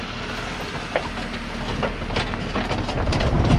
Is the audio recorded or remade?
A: recorded